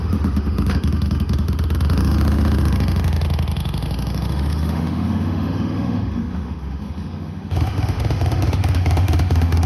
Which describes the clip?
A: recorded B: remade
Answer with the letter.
B